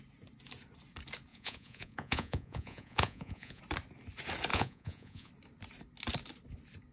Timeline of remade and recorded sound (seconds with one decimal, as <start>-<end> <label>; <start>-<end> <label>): 0.0-1.3 recorded; 1.3-3.6 remade; 3.6-4.5 recorded; 4.5-5.3 remade; 5.3-6.9 recorded